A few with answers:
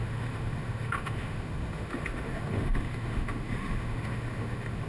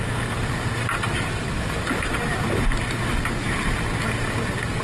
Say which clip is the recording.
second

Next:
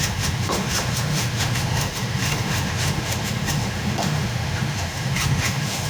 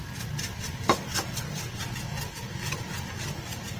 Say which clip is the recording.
second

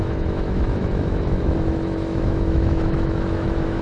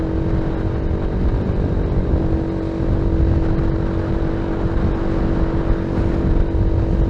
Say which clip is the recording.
second